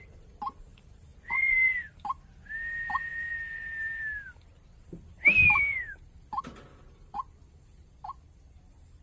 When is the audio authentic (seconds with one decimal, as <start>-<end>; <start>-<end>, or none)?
0.0-1.1; 1.7-5.4; 6.0-9.0